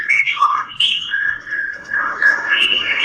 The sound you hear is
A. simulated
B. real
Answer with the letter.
A